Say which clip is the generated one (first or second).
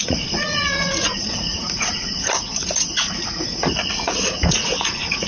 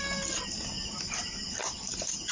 first